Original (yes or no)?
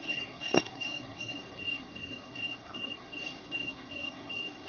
no